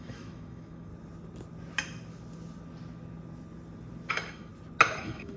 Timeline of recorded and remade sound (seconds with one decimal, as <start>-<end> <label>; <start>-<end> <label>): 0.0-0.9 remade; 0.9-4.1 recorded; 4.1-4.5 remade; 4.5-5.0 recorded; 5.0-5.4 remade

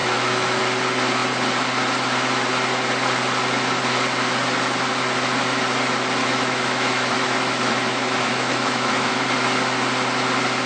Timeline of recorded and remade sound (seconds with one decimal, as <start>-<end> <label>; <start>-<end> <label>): 0.0-0.6 remade; 0.6-6.2 recorded; 6.2-9.1 remade; 9.1-10.7 recorded

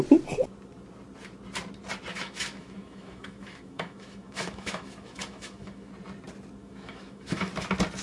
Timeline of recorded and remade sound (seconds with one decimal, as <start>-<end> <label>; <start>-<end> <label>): 0.0-2.1 recorded; 2.1-5.9 remade; 5.9-6.6 recorded; 6.6-7.5 remade; 7.5-8.0 recorded

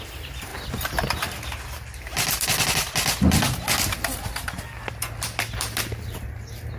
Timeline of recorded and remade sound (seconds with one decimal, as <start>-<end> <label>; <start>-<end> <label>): 0.0-6.8 recorded

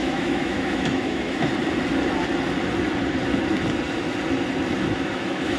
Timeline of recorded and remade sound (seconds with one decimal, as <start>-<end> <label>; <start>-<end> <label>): 0.0-1.5 remade; 1.5-4.9 recorded; 4.9-5.6 remade

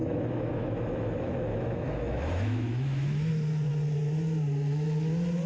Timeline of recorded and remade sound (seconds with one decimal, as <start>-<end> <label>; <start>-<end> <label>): 0.0-3.3 remade; 3.3-5.5 recorded